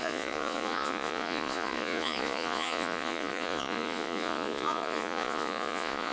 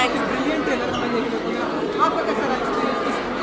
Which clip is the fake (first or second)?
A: first